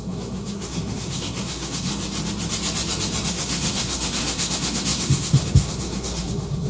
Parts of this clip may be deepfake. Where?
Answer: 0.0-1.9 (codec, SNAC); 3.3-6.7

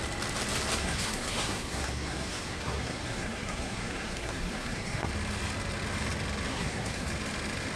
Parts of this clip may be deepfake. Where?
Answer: 0.8-5.1 (codec, SNAC); 6.5-7.1